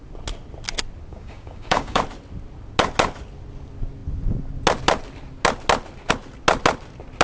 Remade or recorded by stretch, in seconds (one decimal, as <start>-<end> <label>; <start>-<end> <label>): 0.0-1.1 recorded; 1.1-2.0 remade; 2.0-7.2 recorded